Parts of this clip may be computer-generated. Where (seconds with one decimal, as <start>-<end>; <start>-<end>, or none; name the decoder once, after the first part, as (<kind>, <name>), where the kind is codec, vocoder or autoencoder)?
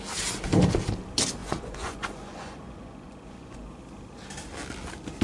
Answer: 1.4-3.8 (vocoder, Vocos)